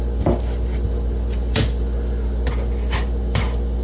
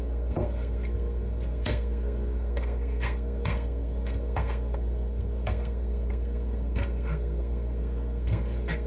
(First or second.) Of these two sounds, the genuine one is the first